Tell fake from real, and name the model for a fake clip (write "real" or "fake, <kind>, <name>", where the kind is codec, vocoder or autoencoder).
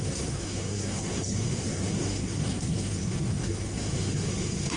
fake, codec, SNAC